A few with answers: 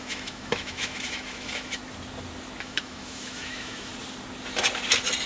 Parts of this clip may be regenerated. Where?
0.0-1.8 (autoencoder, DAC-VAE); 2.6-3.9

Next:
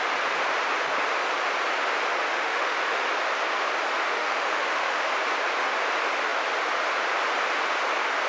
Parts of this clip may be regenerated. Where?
2.3-3.0 (autoencoder, DAC-VAE); 4.1-5.1

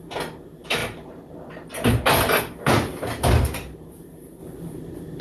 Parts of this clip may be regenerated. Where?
none

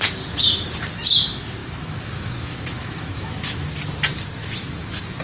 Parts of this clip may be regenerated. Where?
1.6-3.7 (autoencoder, DAC-VAE); 4.4-5.2